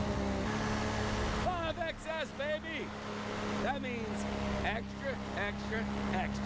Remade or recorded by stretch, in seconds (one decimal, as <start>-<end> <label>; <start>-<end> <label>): 0.0-6.5 recorded